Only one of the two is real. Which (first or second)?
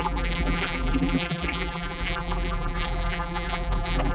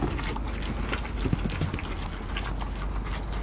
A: second